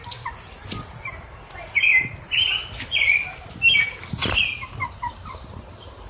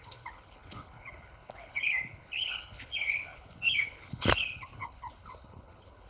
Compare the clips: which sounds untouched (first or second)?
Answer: first